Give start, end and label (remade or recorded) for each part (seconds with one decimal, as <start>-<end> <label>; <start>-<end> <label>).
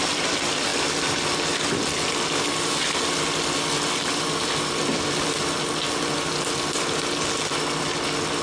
0.0-8.4 recorded